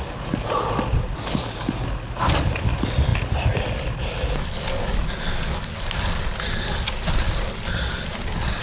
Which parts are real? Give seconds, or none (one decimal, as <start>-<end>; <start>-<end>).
0.0-8.6